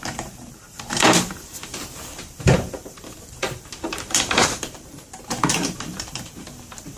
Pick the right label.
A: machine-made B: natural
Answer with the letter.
A